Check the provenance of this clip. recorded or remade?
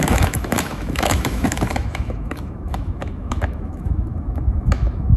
remade